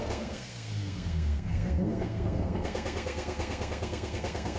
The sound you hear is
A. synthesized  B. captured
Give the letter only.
A